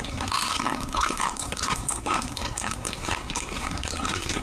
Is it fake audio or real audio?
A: fake